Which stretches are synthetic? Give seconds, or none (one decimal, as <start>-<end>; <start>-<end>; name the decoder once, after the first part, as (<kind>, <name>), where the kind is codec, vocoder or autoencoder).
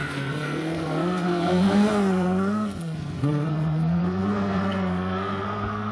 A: 0.0-5.9 (codec, SNAC)